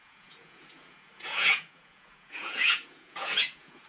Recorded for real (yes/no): no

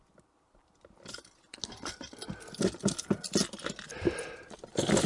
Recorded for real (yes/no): yes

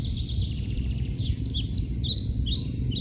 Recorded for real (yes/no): yes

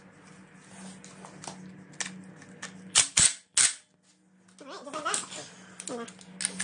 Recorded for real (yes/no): yes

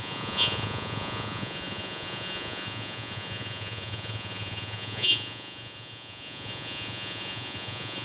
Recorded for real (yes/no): no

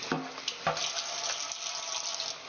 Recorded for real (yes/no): yes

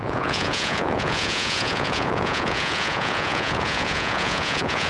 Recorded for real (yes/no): no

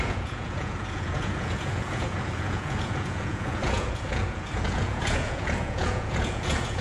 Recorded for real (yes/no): no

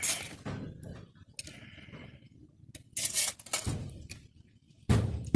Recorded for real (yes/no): yes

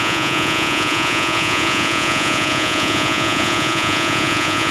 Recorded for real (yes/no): no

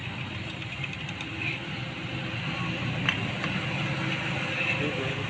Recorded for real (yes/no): yes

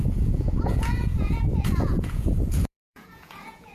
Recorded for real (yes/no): no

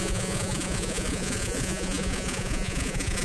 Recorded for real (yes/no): no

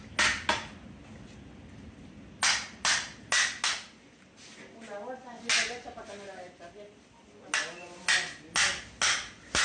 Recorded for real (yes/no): yes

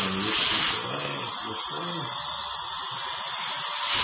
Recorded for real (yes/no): yes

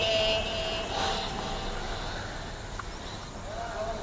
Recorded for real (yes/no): yes